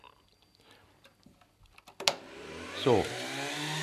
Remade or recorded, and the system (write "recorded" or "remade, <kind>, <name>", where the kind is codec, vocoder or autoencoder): recorded